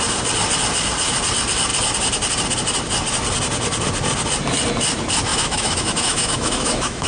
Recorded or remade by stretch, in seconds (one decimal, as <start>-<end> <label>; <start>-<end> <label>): 0.0-5.3 recorded; 5.3-7.1 remade